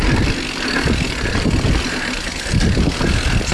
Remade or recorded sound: recorded